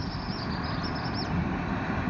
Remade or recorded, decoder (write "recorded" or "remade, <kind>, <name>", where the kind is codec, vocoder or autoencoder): recorded